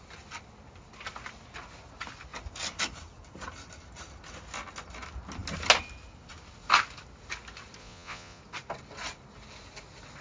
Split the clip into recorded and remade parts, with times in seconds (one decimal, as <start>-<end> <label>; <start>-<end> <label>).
0.0-7.8 recorded; 7.8-8.4 remade; 8.4-10.2 recorded